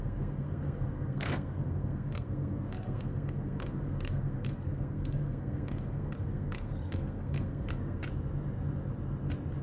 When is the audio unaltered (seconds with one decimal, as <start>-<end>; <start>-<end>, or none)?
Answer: 8.0-9.6